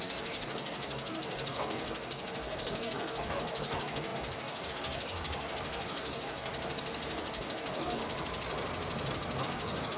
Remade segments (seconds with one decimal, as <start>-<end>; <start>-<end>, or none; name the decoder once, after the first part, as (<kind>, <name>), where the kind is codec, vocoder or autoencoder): 0.0-6.5 (codec, DAC); 7.2-8.0; 9.4-10.0